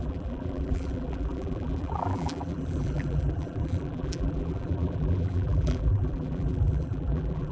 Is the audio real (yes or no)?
no